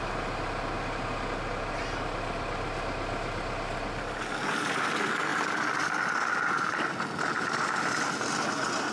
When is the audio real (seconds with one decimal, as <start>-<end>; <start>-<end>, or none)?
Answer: 0.0-8.9